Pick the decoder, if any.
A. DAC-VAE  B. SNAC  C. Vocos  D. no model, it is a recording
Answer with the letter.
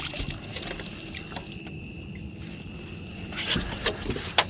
D